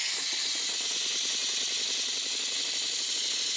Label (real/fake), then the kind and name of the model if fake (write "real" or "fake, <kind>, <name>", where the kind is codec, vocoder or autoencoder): real